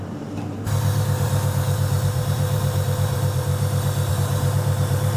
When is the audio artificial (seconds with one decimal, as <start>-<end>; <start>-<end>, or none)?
0.0-3.5; 4.1-5.2